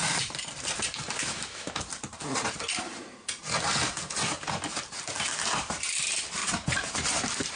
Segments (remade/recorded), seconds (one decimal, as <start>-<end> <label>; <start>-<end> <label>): 0.0-1.2 recorded; 1.2-1.8 remade; 1.8-7.6 recorded